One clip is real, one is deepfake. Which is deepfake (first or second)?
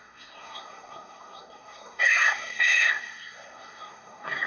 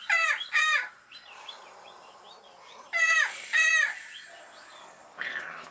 first